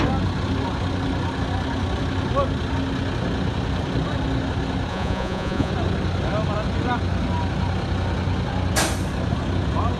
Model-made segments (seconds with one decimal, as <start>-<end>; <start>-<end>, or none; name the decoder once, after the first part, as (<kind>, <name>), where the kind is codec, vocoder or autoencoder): 4.9-5.7 (vocoder, Vocos)